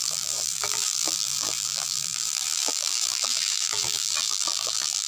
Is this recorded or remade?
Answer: remade